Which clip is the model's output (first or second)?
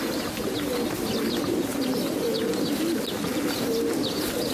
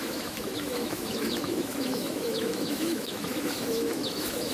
second